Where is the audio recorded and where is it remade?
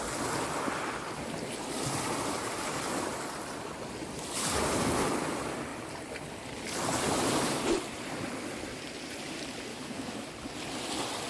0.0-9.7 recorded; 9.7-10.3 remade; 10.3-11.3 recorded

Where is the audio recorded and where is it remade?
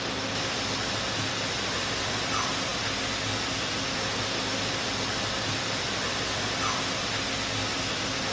0.0-8.3 recorded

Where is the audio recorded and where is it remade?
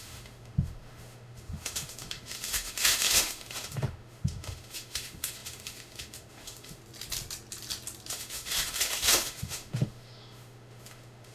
0.0-6.8 remade; 6.8-8.1 recorded; 8.1-11.3 remade